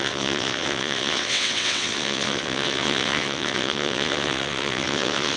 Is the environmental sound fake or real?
fake